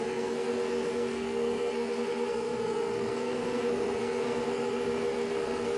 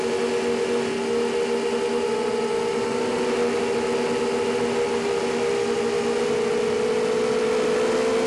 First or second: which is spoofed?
first